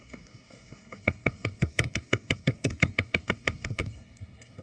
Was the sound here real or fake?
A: fake